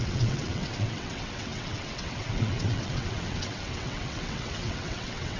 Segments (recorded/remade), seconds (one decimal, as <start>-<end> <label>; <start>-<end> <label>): 0.0-5.4 remade